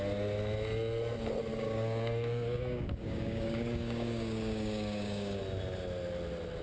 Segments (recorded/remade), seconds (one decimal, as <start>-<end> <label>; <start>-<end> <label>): 0.0-1.5 recorded; 1.5-5.4 remade; 5.4-6.6 recorded